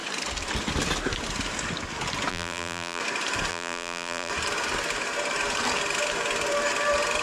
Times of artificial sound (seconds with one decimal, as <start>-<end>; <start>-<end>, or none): 2.3-3.0; 3.5-4.3

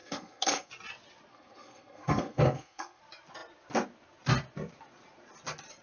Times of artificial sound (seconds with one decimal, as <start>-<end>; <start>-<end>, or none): 0.0-0.7; 1.3-3.0

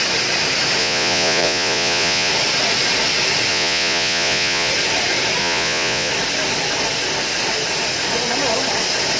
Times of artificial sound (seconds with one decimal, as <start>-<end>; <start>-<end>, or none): 0.8-2.3; 3.5-4.7; 5.4-6.1

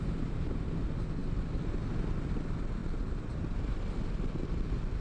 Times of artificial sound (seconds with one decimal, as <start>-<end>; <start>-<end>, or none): none

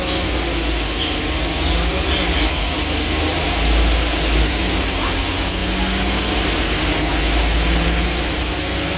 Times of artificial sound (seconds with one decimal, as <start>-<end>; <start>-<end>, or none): none

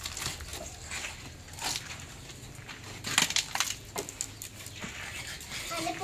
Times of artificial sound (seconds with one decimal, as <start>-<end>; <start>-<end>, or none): none